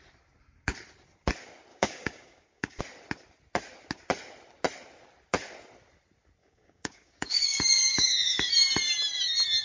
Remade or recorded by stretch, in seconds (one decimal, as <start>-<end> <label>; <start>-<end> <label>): 0.0-1.7 recorded; 1.7-2.8 remade; 2.8-6.4 recorded; 6.4-8.5 remade; 8.5-9.6 recorded